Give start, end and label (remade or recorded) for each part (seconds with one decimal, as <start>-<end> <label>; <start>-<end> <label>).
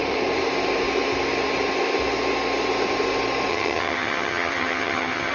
0.0-3.5 recorded; 3.5-5.3 remade